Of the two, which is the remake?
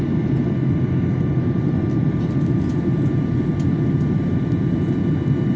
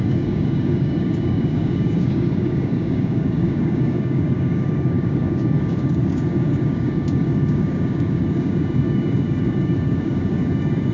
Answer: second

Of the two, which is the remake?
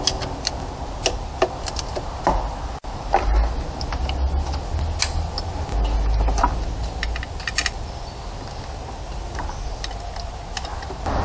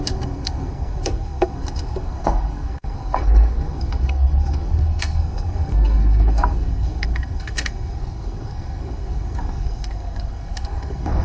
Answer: second